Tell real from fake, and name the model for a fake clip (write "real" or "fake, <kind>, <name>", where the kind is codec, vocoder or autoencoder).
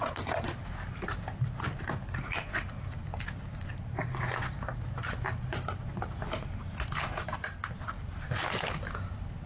fake, vocoder, BigVGAN v2